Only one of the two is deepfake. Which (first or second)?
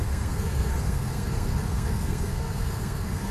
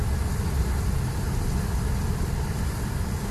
first